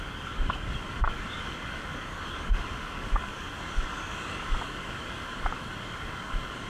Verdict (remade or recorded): remade